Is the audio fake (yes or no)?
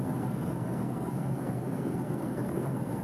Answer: yes